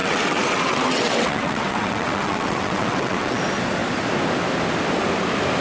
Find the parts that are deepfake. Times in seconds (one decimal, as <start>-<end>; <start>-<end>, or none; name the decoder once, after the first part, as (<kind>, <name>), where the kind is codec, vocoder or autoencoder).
0.0-3.4 (vocoder, WaveNeXt)